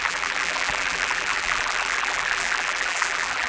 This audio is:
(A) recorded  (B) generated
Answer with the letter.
B